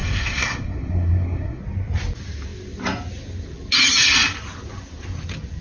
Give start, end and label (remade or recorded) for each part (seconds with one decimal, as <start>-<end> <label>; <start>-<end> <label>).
0.0-1.6 remade; 1.6-5.6 recorded